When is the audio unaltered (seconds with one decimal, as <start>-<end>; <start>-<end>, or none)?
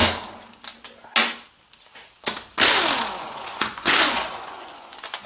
0.0-3.2